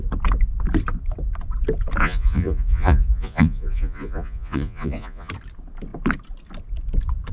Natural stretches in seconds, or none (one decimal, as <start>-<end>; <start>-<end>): 0.0-2.0; 5.3-7.3